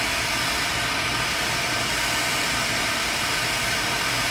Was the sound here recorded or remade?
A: recorded